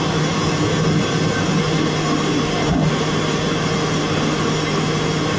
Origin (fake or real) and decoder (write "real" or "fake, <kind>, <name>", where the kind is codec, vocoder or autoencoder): real